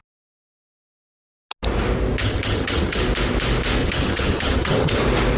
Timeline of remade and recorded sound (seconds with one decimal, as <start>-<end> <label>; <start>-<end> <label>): 0.0-2.2 recorded; 2.2-3.0 remade; 3.0-3.8 recorded; 3.8-5.0 remade; 5.0-5.4 recorded